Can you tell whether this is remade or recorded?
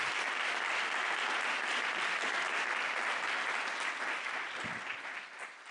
recorded